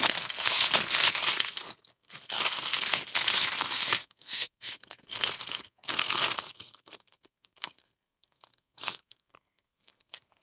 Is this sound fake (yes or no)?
yes